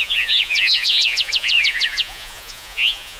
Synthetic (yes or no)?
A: yes